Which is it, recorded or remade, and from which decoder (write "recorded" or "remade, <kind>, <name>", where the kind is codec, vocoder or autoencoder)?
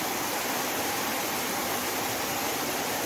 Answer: recorded